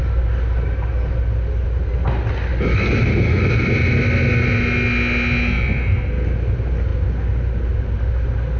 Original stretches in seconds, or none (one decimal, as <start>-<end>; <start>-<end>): 0.0-8.6